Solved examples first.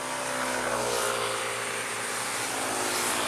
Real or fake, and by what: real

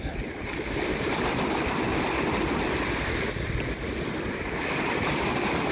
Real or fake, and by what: real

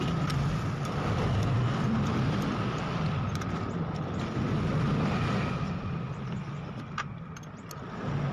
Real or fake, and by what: real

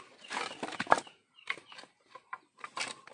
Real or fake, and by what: real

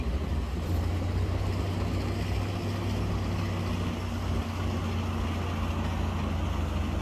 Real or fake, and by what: real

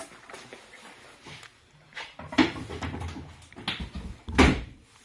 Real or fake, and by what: real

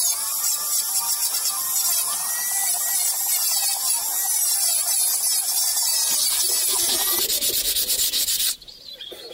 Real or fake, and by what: real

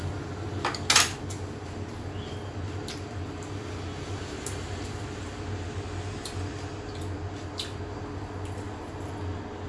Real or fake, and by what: real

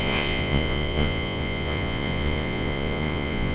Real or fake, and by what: fake, vocoder, Vocos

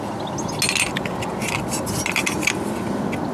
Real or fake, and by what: real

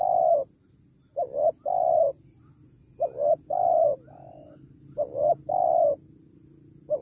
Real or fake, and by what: real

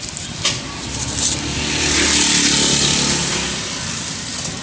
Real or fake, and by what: real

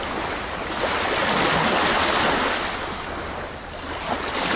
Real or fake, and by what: real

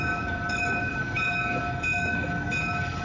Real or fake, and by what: fake, codec, DAC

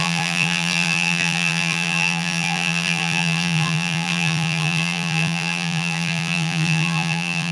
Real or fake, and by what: fake, vocoder, BigVGAN v2